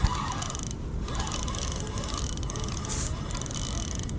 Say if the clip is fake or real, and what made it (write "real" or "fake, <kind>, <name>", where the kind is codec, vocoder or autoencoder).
real